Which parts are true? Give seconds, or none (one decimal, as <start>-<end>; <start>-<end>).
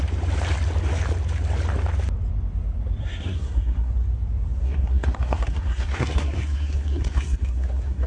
0.0-3.0; 3.9-4.6